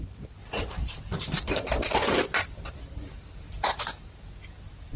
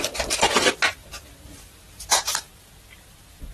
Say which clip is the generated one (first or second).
first